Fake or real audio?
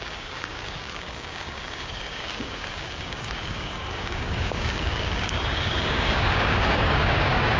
fake